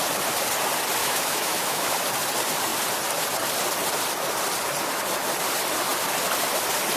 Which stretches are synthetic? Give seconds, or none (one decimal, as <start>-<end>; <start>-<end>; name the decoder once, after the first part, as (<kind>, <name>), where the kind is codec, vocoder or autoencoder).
1.0-1.9 (autoencoder, DAC-VAE)